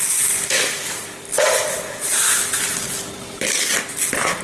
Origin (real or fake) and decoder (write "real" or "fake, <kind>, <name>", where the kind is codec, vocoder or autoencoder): real